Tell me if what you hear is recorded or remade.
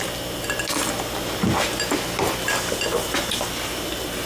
recorded